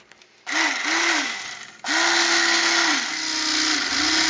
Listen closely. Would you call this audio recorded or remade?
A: recorded